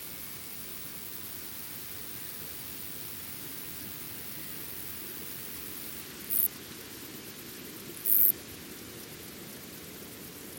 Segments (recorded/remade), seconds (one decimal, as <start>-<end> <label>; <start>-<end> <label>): 0.0-10.6 recorded